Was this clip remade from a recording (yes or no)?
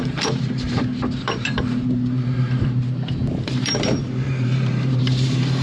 yes